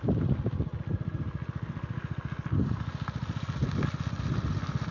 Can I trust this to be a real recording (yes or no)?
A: yes